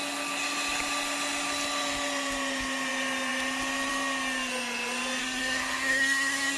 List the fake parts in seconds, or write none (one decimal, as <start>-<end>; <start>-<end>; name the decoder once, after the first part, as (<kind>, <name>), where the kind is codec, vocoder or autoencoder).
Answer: 5.2-6.6 (codec, SNAC)